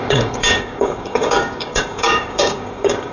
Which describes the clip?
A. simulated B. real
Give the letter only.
A